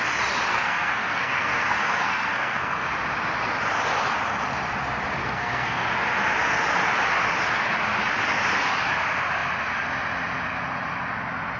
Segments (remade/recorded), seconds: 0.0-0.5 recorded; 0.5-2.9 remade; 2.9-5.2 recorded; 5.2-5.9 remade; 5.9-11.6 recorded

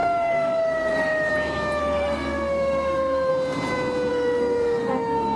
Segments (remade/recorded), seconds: 0.0-1.3 remade; 1.3-1.8 recorded; 1.8-3.3 remade; 3.3-4.1 recorded; 4.1-5.4 remade

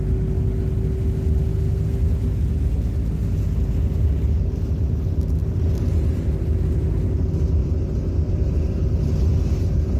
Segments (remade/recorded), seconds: 0.0-1.5 recorded; 1.5-2.1 remade; 2.1-10.0 recorded

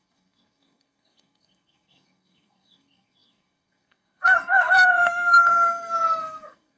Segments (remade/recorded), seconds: 0.0-6.8 remade

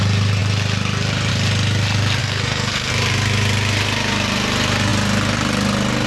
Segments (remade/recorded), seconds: 0.0-2.2 recorded; 2.2-2.9 remade; 2.9-6.1 recorded

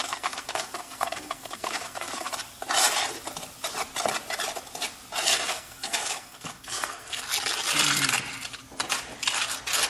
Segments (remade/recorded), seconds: 0.0-2.3 remade; 2.3-5.3 recorded; 5.3-7.2 remade; 7.2-9.9 recorded